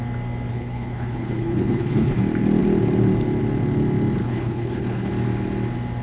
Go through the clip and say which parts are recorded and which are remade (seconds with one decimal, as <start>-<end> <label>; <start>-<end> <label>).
0.0-0.5 recorded; 0.5-2.2 remade; 2.2-4.2 recorded; 4.2-5.1 remade; 5.1-6.0 recorded